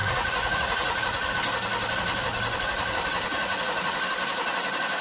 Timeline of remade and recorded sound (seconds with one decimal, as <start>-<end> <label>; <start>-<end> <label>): 0.0-1.3 remade; 1.3-3.3 recorded; 3.3-3.9 remade; 3.9-5.0 recorded